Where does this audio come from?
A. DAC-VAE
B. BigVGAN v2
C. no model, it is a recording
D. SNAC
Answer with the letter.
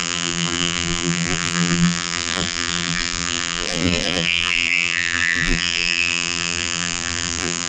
B